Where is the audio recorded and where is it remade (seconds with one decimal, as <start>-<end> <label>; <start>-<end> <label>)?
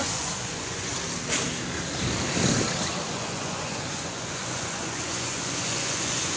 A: 0.0-0.9 remade; 0.9-3.1 recorded; 3.1-6.4 remade